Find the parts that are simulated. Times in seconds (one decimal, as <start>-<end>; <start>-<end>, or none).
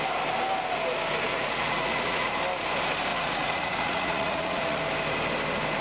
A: 1.3-2.3; 3.1-4.8